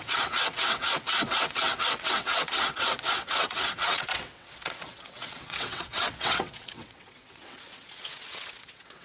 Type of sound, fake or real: fake